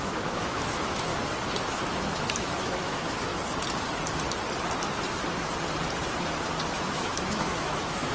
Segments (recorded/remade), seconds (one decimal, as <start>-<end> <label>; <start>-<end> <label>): 0.0-1.1 remade; 1.1-1.6 recorded; 1.6-3.3 remade; 3.3-6.7 recorded; 6.7-8.1 remade